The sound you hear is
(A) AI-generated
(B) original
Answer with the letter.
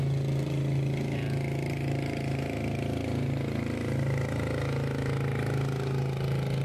B